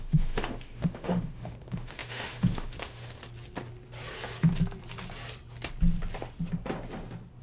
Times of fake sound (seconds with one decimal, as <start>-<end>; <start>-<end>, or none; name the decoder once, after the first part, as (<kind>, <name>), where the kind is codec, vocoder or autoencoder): 0.0-3.2 (autoencoder, DAC-VAE)